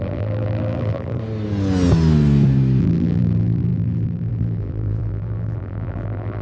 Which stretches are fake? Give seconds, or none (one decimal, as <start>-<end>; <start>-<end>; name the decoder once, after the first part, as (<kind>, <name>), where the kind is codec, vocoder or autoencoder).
0.0-1.2 (vocoder, BigVGAN v2); 2.8-6.4